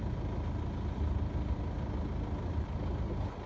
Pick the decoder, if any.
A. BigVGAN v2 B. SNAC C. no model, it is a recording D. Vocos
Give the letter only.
C